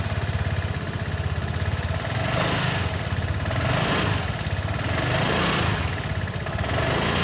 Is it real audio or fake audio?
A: real